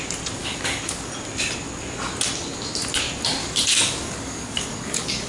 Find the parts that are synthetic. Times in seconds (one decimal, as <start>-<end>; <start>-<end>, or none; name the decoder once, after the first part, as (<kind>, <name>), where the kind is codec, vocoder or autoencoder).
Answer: 0.4-1.1 (codec, DAC); 3.4-5.3